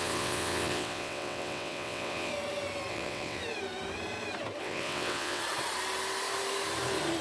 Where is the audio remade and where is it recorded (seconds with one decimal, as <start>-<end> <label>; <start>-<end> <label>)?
0.0-2.3 remade; 2.3-2.9 recorded; 2.9-3.4 remade; 3.4-4.6 recorded; 4.6-5.4 remade; 5.4-7.2 recorded